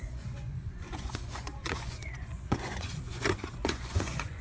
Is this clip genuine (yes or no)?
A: no